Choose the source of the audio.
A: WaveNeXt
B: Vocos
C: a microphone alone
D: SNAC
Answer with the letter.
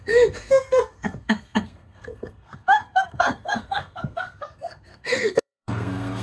D